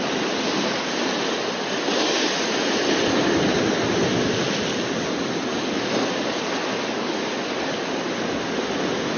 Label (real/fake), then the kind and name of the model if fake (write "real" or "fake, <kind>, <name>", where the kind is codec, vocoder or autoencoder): real